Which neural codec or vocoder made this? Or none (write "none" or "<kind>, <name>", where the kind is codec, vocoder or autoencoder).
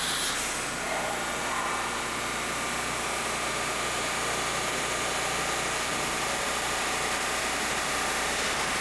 none